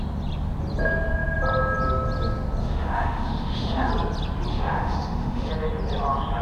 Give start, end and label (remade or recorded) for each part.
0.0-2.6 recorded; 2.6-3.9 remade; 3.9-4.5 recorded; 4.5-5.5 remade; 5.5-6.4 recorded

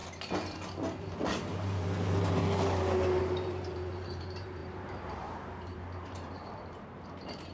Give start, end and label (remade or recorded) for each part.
0.0-1.0 recorded; 1.0-2.4 remade; 2.4-3.2 recorded; 3.2-7.5 remade